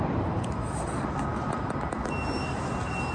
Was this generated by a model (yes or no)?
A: no